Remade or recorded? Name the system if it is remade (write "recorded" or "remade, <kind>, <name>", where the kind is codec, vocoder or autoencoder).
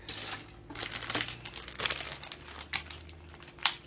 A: recorded